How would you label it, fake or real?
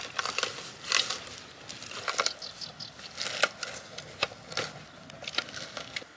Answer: real